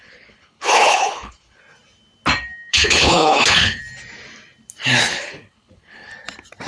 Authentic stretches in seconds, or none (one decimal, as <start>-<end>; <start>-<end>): 1.6-2.7; 3.8-5.0; 6.1-6.7